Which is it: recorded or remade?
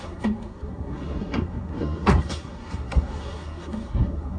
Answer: remade